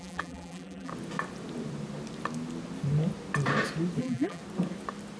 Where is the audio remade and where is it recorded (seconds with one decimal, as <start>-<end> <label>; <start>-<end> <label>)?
0.0-0.9 remade; 0.9-4.0 recorded; 4.0-4.4 remade; 4.4-5.2 recorded

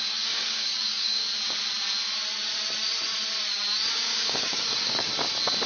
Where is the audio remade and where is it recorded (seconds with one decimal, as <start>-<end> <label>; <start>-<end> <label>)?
0.0-1.2 remade; 1.2-3.9 recorded; 3.9-5.1 remade; 5.1-5.7 recorded